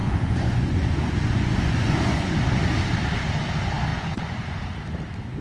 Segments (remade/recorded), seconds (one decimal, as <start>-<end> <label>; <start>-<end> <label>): 0.0-2.3 remade; 2.3-3.9 recorded; 3.9-4.6 remade; 4.6-5.4 recorded